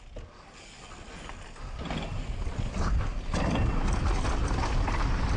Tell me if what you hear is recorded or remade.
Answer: recorded